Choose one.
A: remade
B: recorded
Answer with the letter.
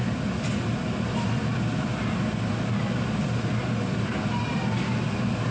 B